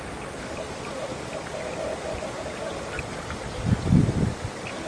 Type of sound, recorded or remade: recorded